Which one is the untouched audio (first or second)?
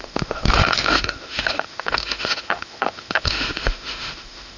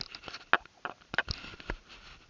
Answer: second